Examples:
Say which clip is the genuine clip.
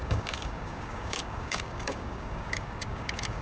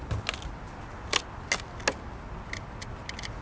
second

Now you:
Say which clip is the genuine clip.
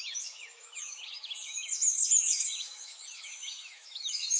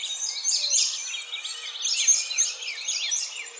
second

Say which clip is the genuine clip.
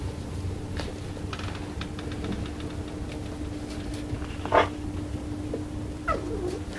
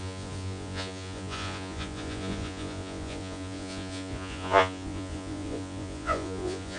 first